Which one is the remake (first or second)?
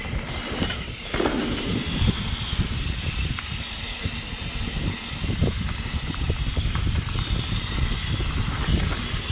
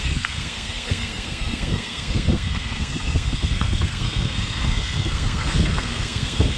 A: second